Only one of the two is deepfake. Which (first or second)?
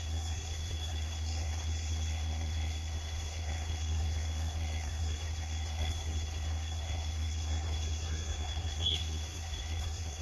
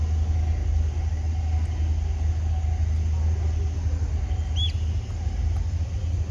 first